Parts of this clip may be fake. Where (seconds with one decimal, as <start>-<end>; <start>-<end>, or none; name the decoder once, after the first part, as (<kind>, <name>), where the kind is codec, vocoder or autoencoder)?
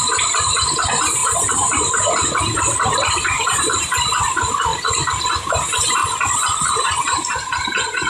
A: 0.0-6.0 (vocoder, BigVGAN v2); 6.7-8.1